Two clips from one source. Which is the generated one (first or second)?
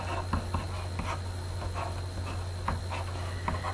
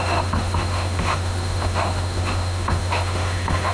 second